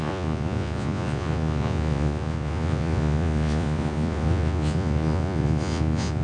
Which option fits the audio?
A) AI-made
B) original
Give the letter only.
A